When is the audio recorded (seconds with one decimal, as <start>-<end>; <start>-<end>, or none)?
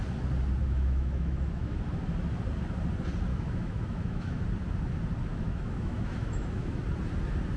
0.0-0.6; 1.8-3.3; 4.4-5.3; 6.8-7.6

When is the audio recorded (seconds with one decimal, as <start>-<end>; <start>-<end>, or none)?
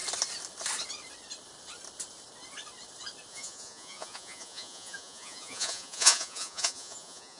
0.0-3.3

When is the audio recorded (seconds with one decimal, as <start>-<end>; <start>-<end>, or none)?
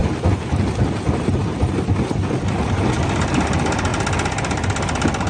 0.0-5.3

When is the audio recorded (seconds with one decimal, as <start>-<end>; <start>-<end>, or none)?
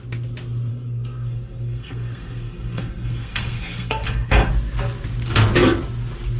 0.0-0.7; 4.5-6.4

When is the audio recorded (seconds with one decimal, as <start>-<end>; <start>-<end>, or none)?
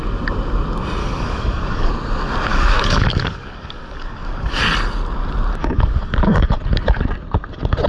0.0-1.0; 1.9-2.5; 4.6-5.6; 6.6-7.9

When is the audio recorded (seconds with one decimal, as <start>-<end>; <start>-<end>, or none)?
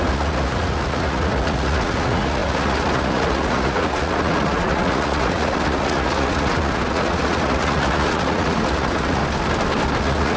9.2-10.0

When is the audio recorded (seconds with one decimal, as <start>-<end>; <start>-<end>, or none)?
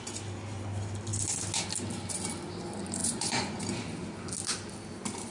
0.0-3.0; 3.6-5.3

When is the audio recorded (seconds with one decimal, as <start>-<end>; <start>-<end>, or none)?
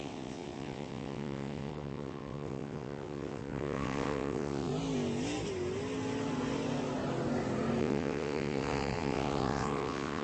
4.7-7.8